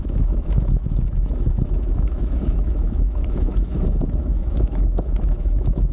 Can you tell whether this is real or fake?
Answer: fake